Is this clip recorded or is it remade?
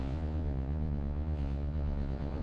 remade